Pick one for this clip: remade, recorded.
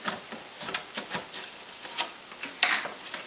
remade